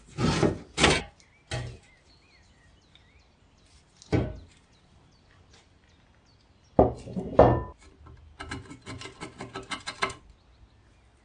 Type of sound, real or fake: real